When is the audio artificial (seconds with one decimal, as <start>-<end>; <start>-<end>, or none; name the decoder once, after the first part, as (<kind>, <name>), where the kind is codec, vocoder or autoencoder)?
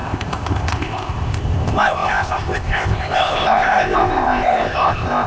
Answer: 0.0-5.3 (codec, ZipCodec)